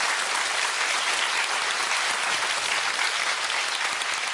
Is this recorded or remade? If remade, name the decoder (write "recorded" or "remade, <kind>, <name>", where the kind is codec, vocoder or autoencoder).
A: recorded